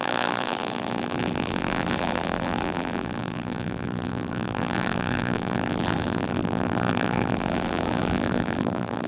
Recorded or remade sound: remade